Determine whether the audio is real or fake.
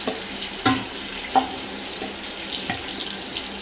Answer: real